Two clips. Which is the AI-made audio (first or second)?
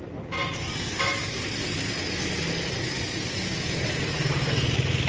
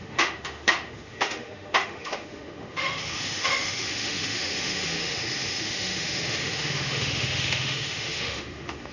second